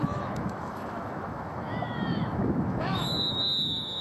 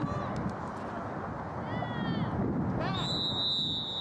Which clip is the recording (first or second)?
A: second